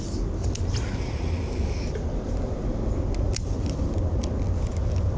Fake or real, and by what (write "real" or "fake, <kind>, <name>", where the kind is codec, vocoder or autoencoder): real